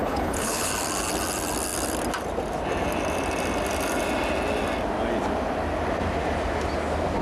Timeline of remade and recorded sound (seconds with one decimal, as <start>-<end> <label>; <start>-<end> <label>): 0.0-0.7 remade; 0.7-7.2 recorded